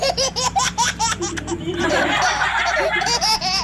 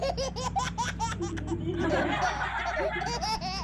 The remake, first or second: first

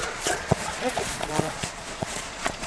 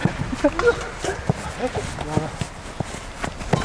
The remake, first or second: first